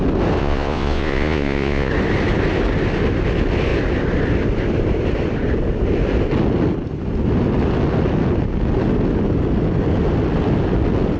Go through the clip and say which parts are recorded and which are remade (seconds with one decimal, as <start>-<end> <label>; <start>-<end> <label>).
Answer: 0.0-0.4 recorded; 0.4-1.9 remade; 1.9-11.2 recorded